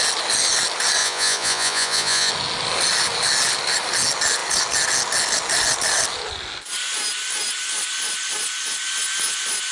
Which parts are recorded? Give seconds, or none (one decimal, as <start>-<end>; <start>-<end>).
0.0-1.0; 2.3-9.7